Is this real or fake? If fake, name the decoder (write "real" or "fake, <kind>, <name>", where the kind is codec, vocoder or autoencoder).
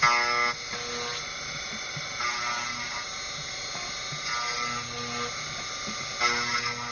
real